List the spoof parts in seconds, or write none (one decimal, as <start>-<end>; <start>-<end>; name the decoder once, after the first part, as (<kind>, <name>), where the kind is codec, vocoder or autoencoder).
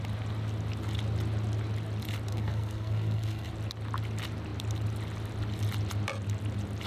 2.3-3.5 (codec, SNAC)